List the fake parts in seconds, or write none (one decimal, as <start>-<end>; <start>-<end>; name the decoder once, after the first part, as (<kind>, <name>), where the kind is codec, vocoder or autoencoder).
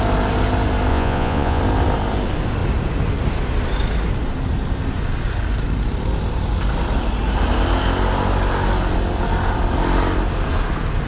0.9-1.6 (vocoder, Vocos)